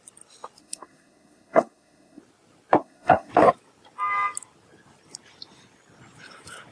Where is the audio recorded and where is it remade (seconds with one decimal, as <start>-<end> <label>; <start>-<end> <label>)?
0.0-0.6 recorded; 0.6-2.2 remade; 2.2-2.8 recorded; 2.8-3.3 remade; 3.3-6.7 recorded